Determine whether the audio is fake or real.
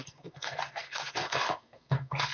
fake